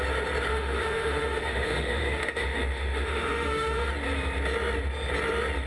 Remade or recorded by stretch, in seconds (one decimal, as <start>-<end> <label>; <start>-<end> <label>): 0.0-0.5 recorded; 0.5-3.9 remade; 3.9-5.7 recorded